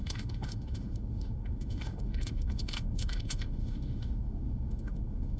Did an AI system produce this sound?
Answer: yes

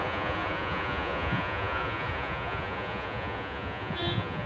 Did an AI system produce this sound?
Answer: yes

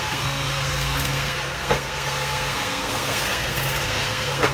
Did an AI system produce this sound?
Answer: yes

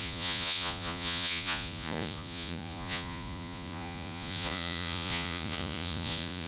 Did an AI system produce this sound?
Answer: yes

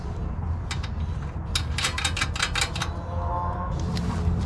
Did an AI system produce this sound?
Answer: no